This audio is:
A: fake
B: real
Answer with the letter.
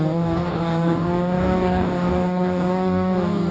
A